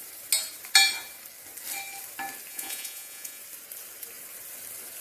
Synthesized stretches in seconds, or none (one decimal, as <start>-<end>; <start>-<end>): 2.5-3.4